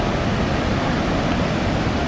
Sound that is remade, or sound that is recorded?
recorded